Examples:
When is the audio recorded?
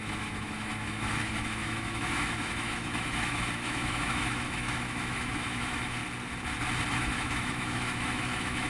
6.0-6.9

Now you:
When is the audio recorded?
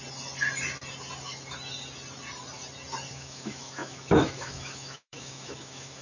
0.0-3.1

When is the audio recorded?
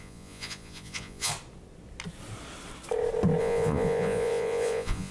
1.3-3.4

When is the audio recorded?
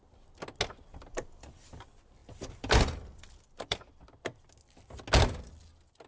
0.0-0.9; 1.8-2.2; 4.0-6.1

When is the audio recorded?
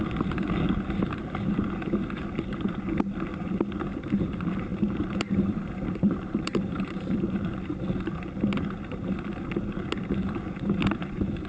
0.0-4.7; 7.6-11.5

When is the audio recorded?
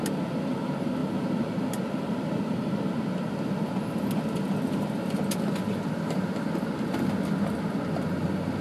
0.0-8.6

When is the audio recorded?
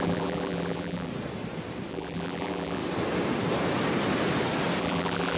1.1-1.9; 2.8-4.8